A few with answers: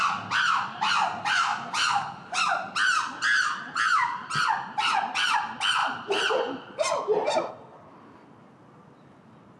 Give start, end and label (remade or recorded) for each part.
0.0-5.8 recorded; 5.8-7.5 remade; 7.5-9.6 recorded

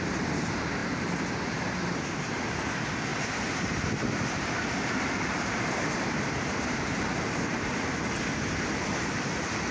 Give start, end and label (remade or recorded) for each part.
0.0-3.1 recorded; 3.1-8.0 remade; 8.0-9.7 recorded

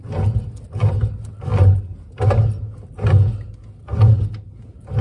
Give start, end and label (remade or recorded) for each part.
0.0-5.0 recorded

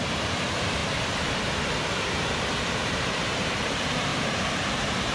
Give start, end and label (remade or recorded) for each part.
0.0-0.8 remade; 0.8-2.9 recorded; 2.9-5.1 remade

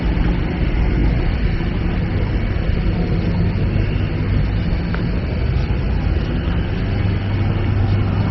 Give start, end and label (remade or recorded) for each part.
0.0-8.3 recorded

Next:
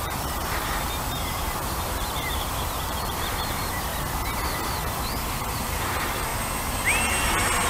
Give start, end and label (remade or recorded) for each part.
0.0-3.9 remade; 3.9-4.9 recorded; 4.9-6.3 remade; 6.3-7.7 recorded